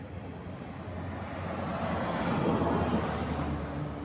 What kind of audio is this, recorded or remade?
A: recorded